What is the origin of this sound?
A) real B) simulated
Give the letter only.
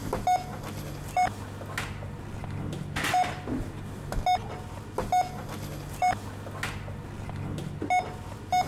A